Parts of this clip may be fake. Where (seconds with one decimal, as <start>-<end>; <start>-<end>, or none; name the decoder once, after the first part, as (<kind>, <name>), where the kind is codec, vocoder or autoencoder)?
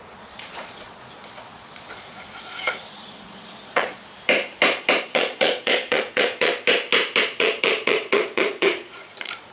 0.0-4.0 (vocoder, Vocos); 5.0-6.5; 7.2-9.5